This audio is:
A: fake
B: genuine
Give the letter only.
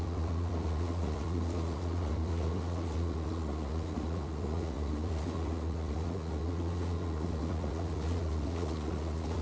A